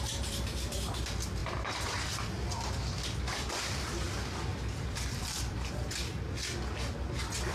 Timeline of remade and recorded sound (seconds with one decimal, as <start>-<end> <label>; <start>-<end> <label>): 0.0-1.4 recorded; 1.4-3.8 remade; 3.8-4.5 recorded; 4.5-5.7 remade; 5.7-7.5 recorded